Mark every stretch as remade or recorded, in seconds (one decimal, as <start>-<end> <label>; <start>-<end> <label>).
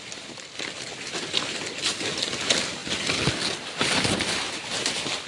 0.0-5.3 recorded